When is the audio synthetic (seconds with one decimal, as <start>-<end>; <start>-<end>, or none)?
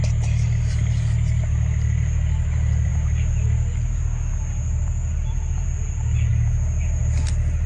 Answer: none